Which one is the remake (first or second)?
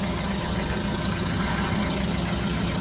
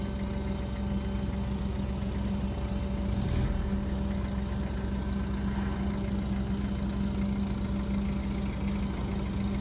first